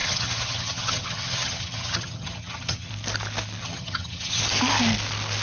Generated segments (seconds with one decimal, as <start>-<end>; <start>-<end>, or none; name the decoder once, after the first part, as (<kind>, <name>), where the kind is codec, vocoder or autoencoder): 0.0-2.9 (vocoder, HiFi-GAN); 3.6-4.4